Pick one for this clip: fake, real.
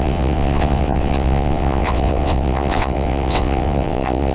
fake